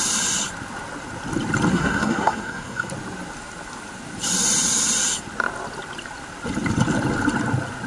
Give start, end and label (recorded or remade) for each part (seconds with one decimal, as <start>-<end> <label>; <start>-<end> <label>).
0.0-1.7 recorded; 1.7-2.9 remade; 2.9-7.9 recorded